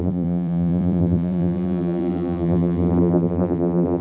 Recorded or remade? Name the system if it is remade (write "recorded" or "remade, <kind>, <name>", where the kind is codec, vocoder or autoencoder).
remade, vocoder, BigVGAN v2